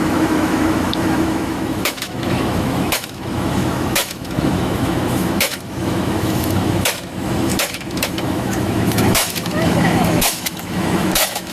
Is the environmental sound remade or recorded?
remade